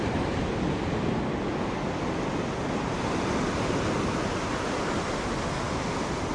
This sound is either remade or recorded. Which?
recorded